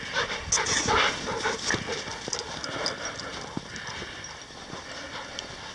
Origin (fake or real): real